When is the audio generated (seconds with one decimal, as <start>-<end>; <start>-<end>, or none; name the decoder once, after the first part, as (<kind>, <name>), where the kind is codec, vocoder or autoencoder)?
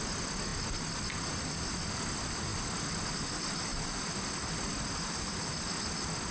none